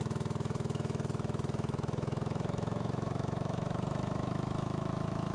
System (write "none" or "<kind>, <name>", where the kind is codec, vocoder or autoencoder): autoencoder, DAC-VAE